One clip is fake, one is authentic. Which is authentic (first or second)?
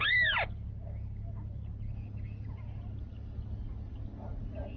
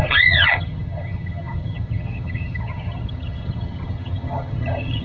first